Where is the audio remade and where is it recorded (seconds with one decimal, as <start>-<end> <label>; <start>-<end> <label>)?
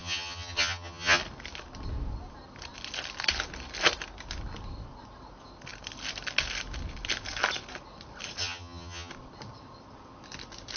0.0-1.2 remade; 1.2-8.4 recorded; 8.4-9.1 remade; 9.1-10.8 recorded